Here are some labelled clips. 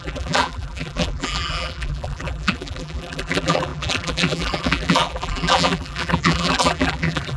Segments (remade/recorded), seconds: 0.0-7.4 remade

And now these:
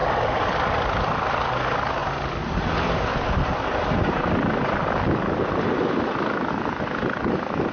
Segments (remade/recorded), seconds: 0.0-1.5 remade; 1.5-2.0 recorded; 2.0-6.5 remade; 6.5-7.7 recorded